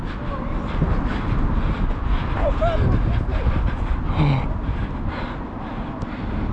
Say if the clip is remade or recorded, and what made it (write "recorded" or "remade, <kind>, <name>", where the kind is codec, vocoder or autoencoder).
recorded